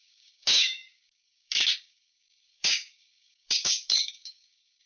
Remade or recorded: remade